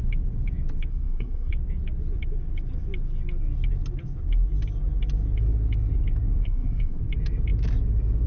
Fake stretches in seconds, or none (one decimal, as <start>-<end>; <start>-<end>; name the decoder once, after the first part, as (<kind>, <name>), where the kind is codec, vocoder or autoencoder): 0.9-1.5 (codec, SNAC); 6.4-7.0